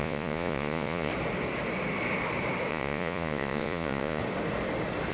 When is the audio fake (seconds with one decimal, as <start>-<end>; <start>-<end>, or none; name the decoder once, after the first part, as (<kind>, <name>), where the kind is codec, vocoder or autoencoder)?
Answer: 0.0-1.1 (vocoder, Vocos); 2.7-4.2